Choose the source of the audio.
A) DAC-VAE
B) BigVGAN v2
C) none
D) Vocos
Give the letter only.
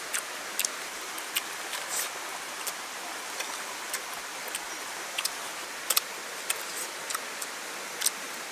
C